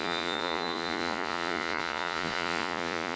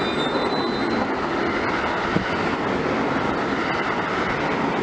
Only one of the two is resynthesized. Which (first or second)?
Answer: first